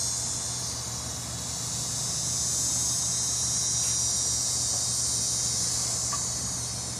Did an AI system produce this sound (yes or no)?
no